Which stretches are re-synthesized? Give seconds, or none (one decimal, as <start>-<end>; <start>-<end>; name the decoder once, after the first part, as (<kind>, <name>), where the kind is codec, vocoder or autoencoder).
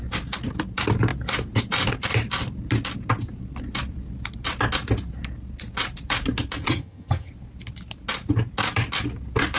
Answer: 6.6-7.3 (vocoder, HiFi-GAN)